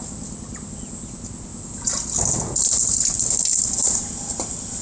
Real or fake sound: real